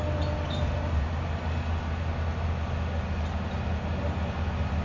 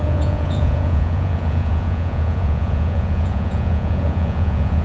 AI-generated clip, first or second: second